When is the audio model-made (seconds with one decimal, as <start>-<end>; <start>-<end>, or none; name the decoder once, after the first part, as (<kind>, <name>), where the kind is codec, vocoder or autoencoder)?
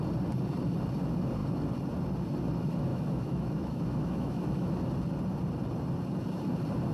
2.9-4.7 (autoencoder, DAC-VAE)